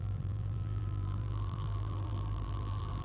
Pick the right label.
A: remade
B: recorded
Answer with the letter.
A